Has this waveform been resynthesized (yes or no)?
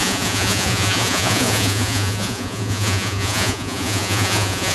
yes